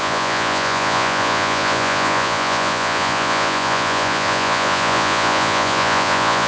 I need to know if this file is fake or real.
fake